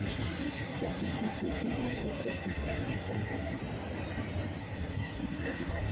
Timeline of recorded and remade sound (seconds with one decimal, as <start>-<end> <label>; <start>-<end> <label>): 0.0-3.6 remade; 3.6-4.6 recorded; 4.6-5.9 remade